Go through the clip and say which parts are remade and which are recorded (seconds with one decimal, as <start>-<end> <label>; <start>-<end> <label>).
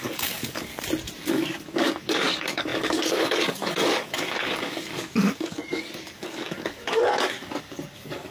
0.0-0.7 remade; 0.7-1.3 recorded; 1.3-8.3 remade